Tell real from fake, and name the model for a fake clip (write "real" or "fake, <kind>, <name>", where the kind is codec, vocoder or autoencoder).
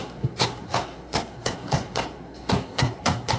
fake, codec, SNAC